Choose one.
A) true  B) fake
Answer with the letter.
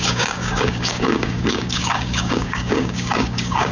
B